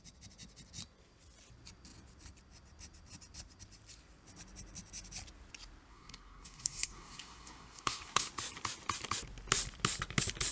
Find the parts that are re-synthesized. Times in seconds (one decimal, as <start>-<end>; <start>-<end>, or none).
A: 5.9-8.3